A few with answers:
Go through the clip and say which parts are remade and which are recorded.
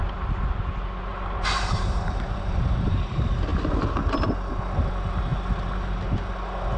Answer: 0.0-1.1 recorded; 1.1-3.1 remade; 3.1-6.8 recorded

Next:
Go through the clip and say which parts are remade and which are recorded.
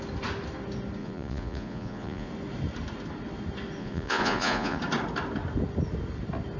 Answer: 0.0-1.0 recorded; 1.0-2.3 remade; 2.3-3.8 recorded; 3.8-4.8 remade; 4.8-6.6 recorded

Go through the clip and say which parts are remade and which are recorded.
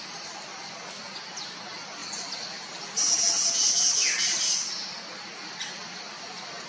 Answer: 0.0-6.7 recorded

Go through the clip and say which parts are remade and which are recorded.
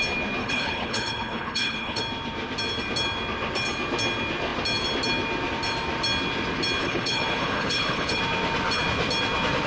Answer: 0.0-0.4 recorded; 0.4-2.0 remade; 2.0-6.8 recorded; 6.8-8.2 remade; 8.2-9.7 recorded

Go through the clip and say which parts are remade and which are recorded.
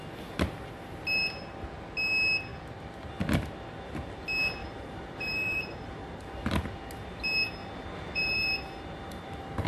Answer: 0.0-2.5 recorded; 2.5-3.1 remade; 3.1-4.6 recorded; 4.6-6.2 remade; 6.2-7.6 recorded; 7.6-9.7 remade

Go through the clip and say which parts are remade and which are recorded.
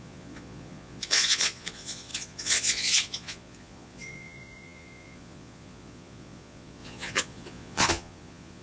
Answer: 0.0-8.6 remade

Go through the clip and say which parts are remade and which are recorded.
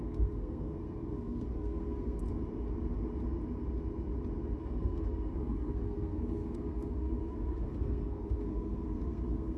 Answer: 0.0-2.2 remade; 2.2-4.6 recorded; 4.6-9.6 remade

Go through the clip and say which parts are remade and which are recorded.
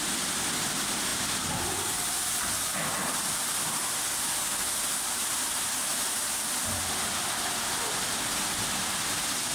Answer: 0.0-9.5 recorded